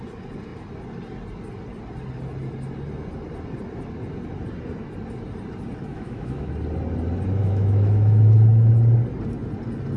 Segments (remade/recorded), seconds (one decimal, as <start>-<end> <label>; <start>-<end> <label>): 0.0-5.9 recorded; 5.9-6.5 remade; 6.5-7.4 recorded; 7.4-8.7 remade; 8.7-10.0 recorded